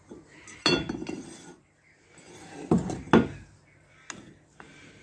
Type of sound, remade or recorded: recorded